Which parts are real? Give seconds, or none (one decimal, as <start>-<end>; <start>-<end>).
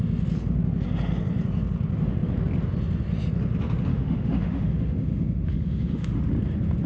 0.0-3.9; 6.2-6.9